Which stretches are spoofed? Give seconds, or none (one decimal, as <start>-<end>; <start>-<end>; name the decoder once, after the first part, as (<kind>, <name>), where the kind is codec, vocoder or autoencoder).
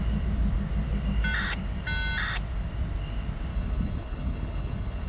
3.5-5.1 (codec, HILCodec)